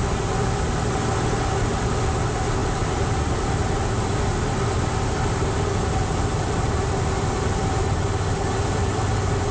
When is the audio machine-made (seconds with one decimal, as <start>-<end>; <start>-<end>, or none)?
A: none